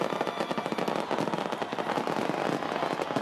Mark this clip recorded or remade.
recorded